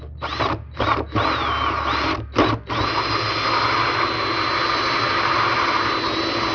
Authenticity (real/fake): real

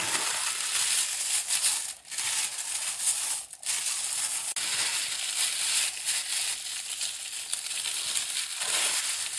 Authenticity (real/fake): real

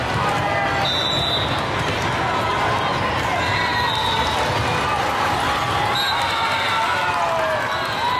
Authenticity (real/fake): real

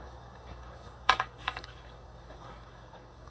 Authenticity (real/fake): fake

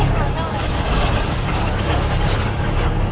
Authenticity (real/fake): fake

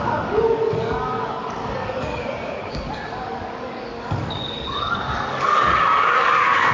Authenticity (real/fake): fake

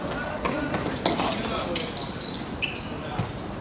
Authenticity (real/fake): real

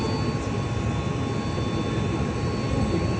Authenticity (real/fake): real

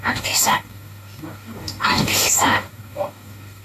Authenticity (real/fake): fake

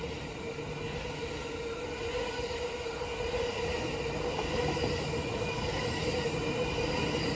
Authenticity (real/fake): real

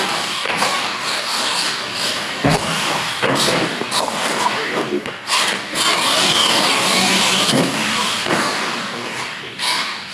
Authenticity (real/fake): fake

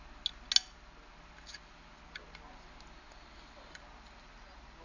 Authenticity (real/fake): real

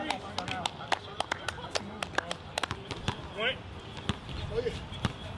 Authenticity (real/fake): real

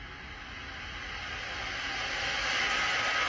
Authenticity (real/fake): real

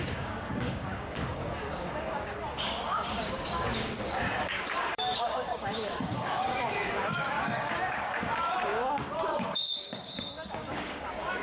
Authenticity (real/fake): fake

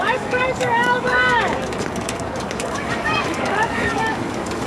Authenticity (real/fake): fake